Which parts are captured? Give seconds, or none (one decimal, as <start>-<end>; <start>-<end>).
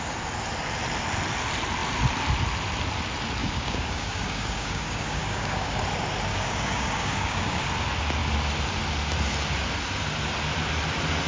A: 0.0-3.4; 5.8-6.3; 7.6-11.3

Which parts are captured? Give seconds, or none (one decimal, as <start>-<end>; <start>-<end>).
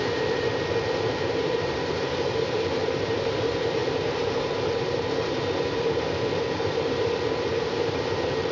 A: none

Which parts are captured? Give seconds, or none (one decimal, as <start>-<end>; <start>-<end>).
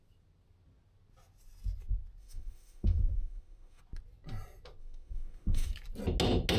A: 0.0-2.2; 3.8-4.8; 5.7-6.6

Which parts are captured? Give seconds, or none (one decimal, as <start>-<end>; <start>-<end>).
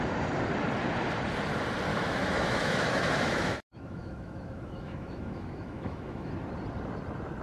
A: 0.0-1.9; 6.3-7.4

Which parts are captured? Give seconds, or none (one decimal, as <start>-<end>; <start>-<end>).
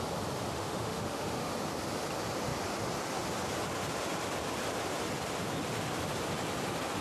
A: 0.0-0.5; 1.5-7.0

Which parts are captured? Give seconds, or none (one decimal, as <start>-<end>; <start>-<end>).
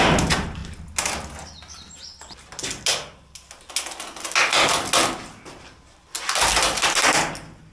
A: 0.0-7.7